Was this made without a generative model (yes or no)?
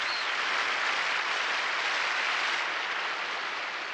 yes